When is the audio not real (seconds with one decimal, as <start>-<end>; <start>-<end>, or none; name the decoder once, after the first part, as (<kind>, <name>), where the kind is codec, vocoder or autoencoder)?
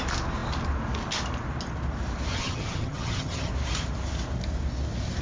2.3-3.5 (vocoder, HiFi-GAN)